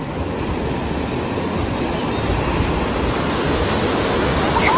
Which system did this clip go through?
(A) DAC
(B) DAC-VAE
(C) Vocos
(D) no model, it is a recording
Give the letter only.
D